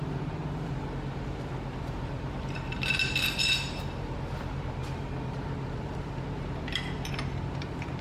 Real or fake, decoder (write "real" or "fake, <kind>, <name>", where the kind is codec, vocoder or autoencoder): fake, vocoder, BigVGAN v2